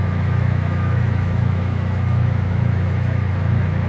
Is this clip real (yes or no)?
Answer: no